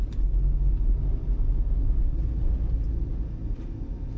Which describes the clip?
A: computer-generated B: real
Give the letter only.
B